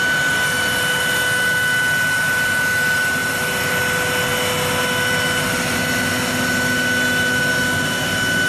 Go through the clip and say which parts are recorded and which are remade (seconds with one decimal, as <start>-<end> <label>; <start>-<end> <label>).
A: 0.0-8.5 recorded